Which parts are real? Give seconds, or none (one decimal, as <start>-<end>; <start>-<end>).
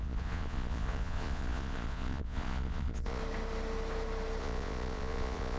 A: 3.2-4.4